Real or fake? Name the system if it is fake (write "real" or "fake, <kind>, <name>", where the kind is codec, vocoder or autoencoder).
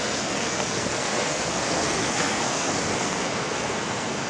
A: fake, codec, SNAC